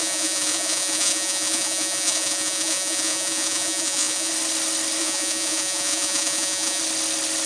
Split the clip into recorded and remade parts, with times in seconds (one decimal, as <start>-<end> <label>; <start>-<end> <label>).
0.0-4.3 remade; 4.3-5.0 recorded; 5.0-6.8 remade; 6.8-7.5 recorded